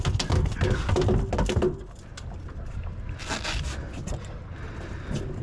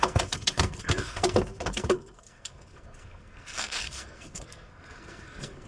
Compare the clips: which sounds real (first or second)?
first